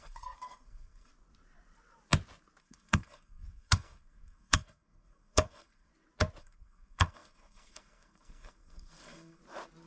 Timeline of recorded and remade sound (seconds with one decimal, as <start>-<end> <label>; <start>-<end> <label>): 0.0-1.1 remade; 1.1-2.6 recorded; 2.6-5.9 remade; 5.9-6.4 recorded; 6.4-9.4 remade; 9.4-9.9 recorded